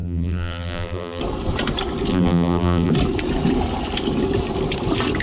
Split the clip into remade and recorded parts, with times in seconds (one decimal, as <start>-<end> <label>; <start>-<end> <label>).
0.0-1.2 remade; 1.2-2.1 recorded; 2.1-2.9 remade; 2.9-5.2 recorded